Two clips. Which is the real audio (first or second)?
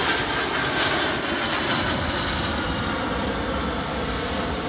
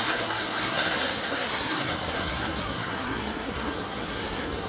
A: first